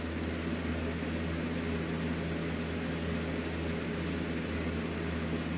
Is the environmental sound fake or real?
real